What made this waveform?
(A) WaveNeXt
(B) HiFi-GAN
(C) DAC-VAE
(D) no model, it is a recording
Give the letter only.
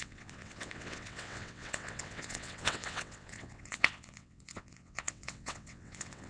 A